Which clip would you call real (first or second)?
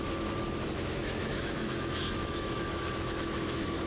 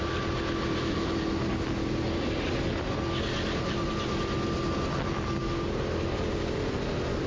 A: second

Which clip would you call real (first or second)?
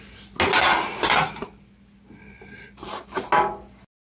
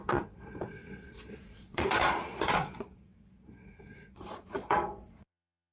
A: first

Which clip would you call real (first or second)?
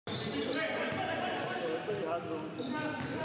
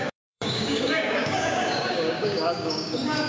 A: first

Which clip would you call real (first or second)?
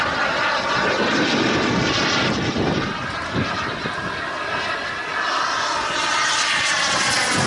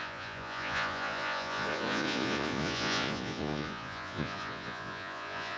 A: first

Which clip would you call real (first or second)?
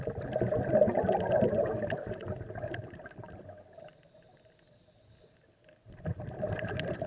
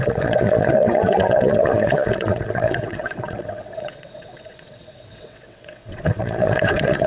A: first